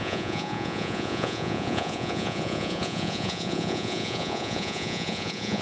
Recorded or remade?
remade